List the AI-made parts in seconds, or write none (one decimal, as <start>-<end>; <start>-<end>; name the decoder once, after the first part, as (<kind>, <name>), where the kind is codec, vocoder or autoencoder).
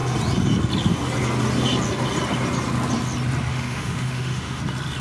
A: 3.5-4.6 (autoencoder, DAC-VAE)